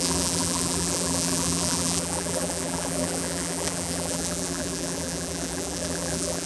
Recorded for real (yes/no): no